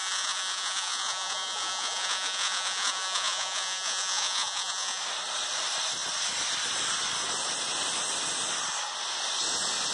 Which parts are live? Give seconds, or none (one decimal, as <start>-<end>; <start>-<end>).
5.0-9.9